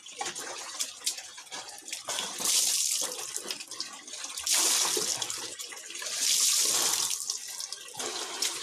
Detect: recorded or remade recorded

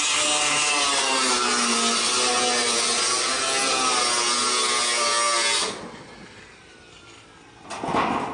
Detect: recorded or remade recorded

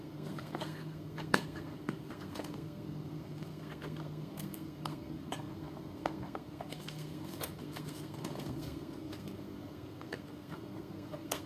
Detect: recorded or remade remade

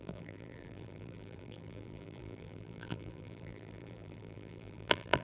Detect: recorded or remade remade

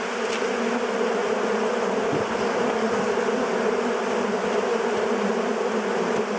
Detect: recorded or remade recorded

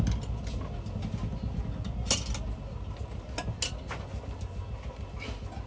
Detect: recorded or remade recorded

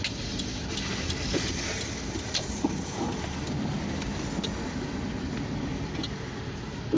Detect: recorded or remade recorded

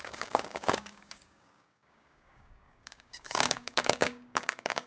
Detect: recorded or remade remade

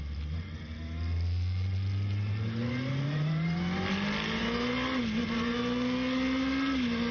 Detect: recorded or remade recorded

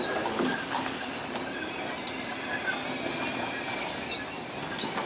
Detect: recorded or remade recorded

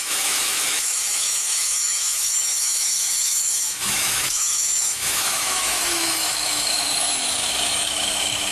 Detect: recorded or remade remade